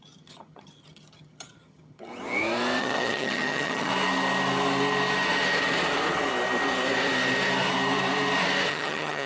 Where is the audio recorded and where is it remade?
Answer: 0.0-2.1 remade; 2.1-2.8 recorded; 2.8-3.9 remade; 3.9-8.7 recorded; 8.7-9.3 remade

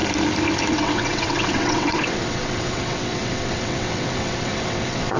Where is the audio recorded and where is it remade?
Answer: 0.0-0.7 recorded; 0.7-5.2 remade

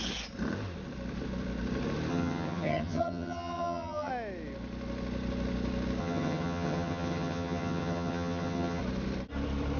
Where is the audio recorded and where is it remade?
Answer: 0.0-2.1 recorded; 2.1-4.1 remade; 4.1-6.0 recorded; 6.0-8.8 remade; 8.8-9.8 recorded

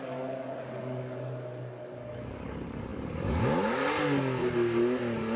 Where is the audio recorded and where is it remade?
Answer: 0.0-3.8 remade; 3.8-5.4 recorded